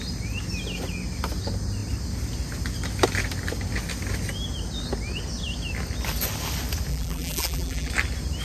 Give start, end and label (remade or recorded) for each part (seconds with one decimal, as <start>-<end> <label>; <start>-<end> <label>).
0.0-6.9 recorded; 6.9-7.9 remade; 7.9-8.4 recorded